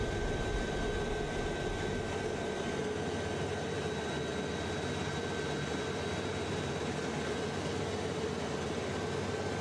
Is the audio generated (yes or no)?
no